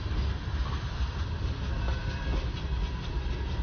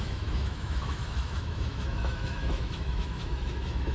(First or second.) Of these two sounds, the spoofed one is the second